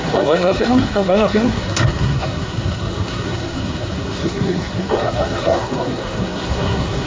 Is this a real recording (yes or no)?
no